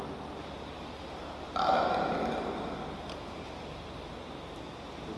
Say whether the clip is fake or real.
real